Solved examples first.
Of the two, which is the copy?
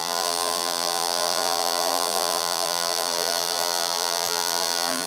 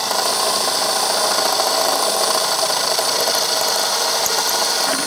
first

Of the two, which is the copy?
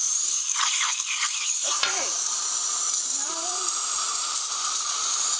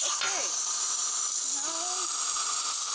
first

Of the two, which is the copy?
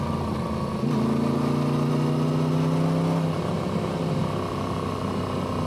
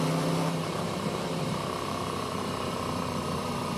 second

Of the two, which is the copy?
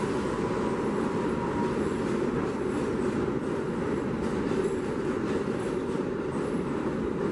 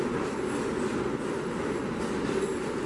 first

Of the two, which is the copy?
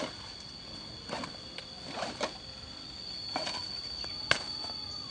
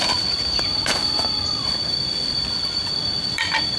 second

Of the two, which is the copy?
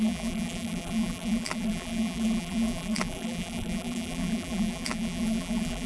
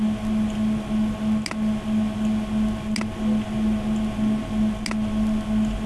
first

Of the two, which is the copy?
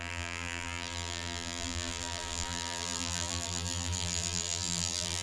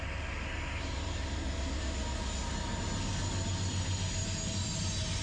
first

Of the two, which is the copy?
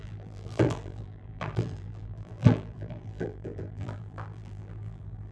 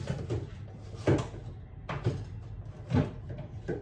first